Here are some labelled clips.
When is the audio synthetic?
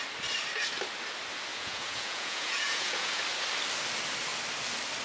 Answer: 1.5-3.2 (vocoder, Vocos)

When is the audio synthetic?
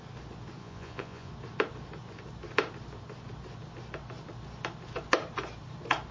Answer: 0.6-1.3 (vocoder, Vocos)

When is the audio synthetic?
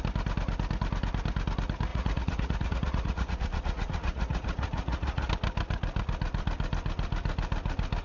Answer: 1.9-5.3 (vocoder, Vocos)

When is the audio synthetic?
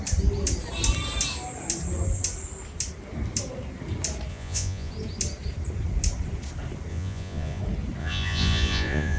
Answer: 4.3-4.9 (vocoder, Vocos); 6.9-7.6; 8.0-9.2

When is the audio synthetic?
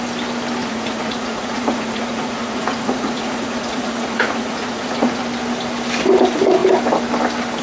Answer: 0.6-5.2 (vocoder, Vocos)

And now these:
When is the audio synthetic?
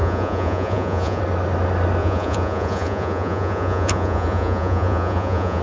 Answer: 0.0-1.2 (vocoder, Vocos); 2.0-5.6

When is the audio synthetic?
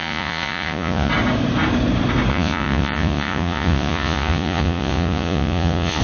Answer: 0.0-1.1 (vocoder, Vocos); 2.3-6.0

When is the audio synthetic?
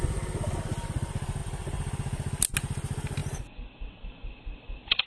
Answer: none